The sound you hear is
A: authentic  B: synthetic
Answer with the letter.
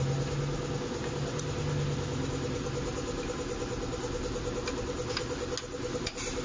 A